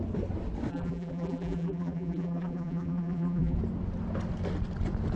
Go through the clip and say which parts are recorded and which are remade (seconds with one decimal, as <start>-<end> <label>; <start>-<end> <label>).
0.0-0.7 recorded; 0.7-3.6 remade; 3.6-5.2 recorded